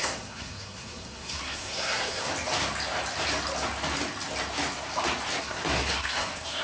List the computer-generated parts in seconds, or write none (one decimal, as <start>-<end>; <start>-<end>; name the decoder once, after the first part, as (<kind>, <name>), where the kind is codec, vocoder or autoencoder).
0.0-2.3 (codec, SNAC); 5.4-6.6